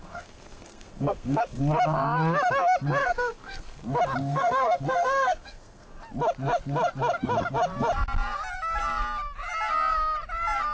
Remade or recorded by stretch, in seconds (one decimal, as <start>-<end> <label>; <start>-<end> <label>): 0.0-1.6 remade; 1.6-3.0 recorded; 3.0-3.8 remade; 3.8-4.2 recorded; 4.2-6.0 remade; 6.0-10.7 recorded